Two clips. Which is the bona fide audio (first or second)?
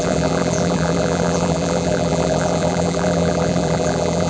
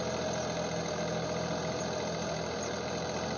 second